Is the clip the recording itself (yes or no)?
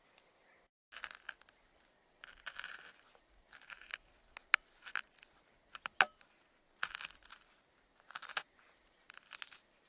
yes